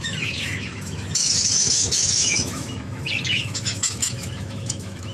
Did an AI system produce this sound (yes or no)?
yes